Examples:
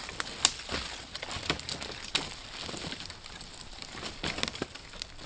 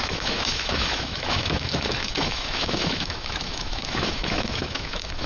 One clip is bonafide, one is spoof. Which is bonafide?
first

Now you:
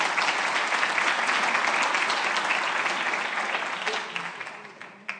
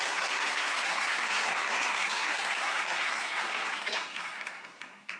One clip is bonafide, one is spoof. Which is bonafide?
first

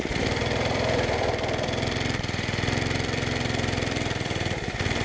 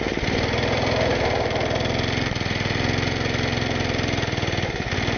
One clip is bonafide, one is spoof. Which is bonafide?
second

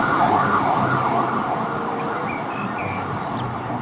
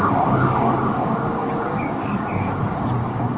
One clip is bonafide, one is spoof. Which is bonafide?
first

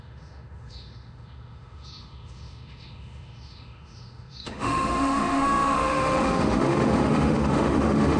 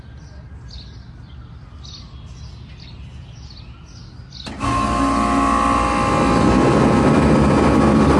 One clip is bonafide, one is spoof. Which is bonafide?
second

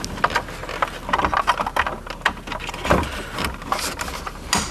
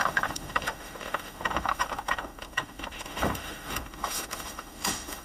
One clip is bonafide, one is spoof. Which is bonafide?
first